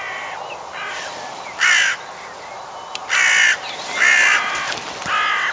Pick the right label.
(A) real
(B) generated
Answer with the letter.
A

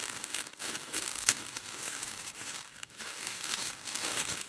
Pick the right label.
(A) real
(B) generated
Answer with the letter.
B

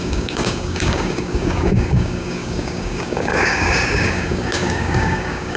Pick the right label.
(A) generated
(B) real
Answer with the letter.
A